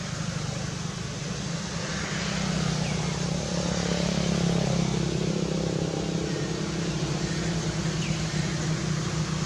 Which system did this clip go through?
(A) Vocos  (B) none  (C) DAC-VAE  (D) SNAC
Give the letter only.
B